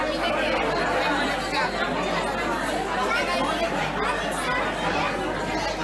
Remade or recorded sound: recorded